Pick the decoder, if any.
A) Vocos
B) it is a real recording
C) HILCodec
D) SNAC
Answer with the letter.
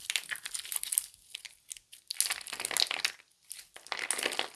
B